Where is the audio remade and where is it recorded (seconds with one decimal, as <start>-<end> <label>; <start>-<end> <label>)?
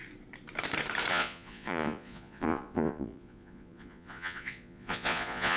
0.0-1.1 recorded; 1.1-5.6 remade